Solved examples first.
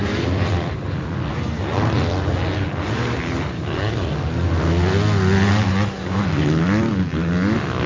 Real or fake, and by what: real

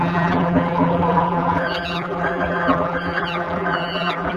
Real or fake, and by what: fake, vocoder, BigVGAN v2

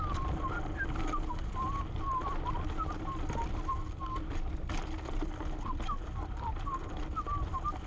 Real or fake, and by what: real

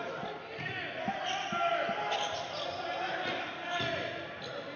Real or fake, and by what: real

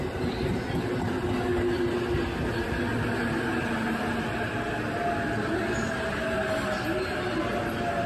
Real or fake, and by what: real